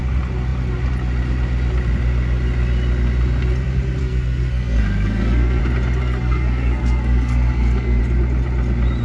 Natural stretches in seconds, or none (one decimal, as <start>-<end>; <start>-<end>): 0.0-4.0; 5.6-6.0; 8.0-9.0

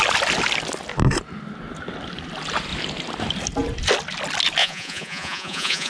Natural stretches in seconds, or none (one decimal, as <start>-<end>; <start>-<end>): 0.0-4.6

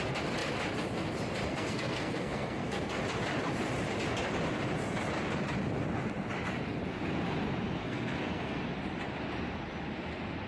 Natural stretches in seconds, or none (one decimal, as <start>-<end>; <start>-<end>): 0.0-1.5; 3.0-7.8; 8.6-10.5

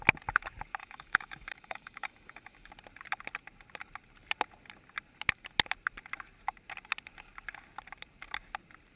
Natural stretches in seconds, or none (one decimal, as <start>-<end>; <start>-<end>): 0.0-0.8; 2.7-9.0

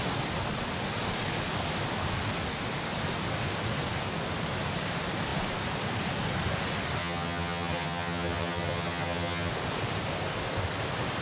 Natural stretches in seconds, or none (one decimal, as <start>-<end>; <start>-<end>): 0.0-7.0; 9.5-11.2

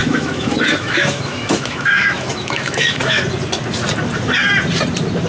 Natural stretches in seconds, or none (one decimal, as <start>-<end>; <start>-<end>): 3.2-5.3

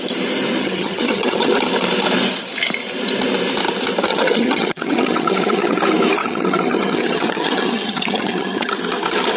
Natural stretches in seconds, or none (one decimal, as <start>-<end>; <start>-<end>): 0.0-0.6; 1.5-4.1; 5.8-6.2; 8.8-9.4